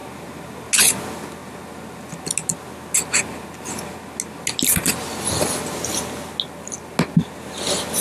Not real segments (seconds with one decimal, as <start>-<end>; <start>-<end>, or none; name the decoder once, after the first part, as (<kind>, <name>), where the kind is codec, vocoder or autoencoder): none

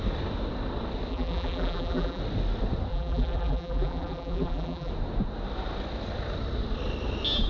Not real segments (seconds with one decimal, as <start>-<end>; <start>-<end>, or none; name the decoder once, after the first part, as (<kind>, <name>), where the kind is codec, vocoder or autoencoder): 1.1-2.2 (vocoder, BigVGAN v2); 2.9-4.9

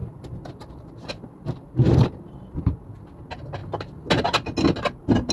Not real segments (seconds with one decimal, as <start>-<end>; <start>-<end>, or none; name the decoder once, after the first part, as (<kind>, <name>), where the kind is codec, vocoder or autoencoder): 0.0-3.2 (vocoder, BigVGAN v2)

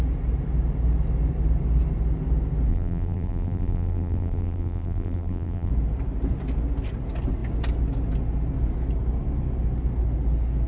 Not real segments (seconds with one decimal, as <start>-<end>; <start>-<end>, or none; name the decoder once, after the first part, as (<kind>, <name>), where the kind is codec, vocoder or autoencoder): 2.7-5.7 (vocoder, BigVGAN v2)

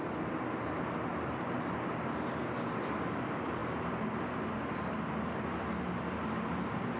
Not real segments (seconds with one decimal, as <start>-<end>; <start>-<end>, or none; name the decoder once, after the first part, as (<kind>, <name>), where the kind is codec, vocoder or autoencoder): 1.1-1.6 (vocoder, BigVGAN v2)

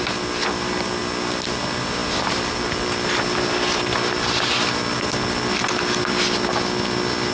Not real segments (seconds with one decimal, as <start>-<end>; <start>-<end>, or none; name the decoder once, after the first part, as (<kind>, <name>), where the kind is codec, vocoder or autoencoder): none

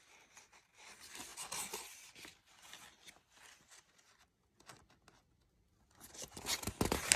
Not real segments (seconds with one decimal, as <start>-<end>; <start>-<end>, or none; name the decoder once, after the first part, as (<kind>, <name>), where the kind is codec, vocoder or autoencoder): none

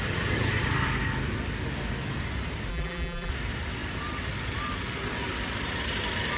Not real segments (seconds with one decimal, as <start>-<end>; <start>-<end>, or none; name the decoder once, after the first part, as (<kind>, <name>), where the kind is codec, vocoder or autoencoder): 2.7-3.3 (vocoder, BigVGAN v2)